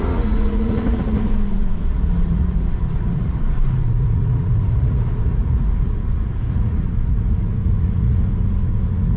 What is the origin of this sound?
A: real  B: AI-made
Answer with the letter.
B